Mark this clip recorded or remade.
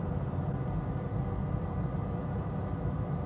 recorded